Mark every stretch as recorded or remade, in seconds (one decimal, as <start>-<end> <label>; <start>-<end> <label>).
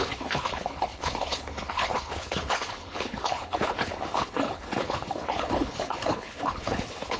0.0-7.2 remade